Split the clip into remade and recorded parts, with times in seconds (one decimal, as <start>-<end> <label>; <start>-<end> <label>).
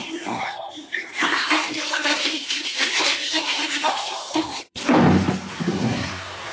0.0-4.8 remade; 4.8-5.5 recorded; 5.5-6.5 remade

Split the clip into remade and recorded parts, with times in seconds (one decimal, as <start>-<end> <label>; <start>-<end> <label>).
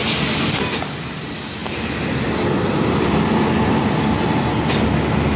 0.0-5.4 recorded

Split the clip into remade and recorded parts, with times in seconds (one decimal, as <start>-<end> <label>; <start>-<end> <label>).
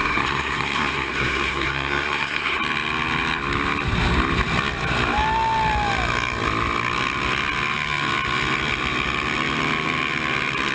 0.0-2.6 remade; 2.6-10.7 recorded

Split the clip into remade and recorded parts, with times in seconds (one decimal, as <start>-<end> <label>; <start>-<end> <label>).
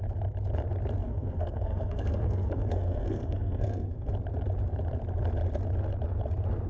0.0-1.0 recorded; 1.0-4.1 remade; 4.1-6.7 recorded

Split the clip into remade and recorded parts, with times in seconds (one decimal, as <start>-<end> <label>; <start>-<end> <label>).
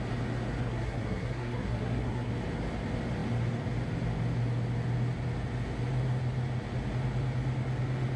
0.0-0.6 recorded; 0.6-2.3 remade; 2.3-8.2 recorded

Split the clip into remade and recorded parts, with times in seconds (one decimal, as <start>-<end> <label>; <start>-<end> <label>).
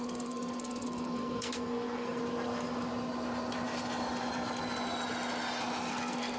0.0-2.2 remade; 2.2-5.9 recorded; 5.9-6.4 remade